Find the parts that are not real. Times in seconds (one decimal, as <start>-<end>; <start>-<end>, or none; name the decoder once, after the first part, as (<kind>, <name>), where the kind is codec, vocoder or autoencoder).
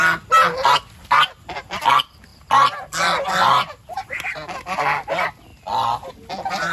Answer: none